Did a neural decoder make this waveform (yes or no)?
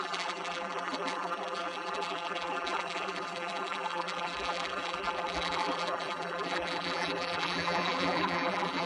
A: yes